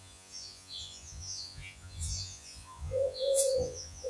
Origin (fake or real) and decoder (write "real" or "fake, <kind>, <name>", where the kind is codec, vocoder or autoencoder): fake, vocoder, Vocos